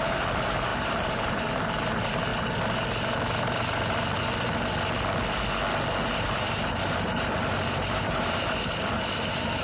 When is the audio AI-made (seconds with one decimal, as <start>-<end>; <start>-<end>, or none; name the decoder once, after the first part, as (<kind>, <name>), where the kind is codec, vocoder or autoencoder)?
0.0-2.3 (vocoder, BigVGAN v2); 6.1-9.6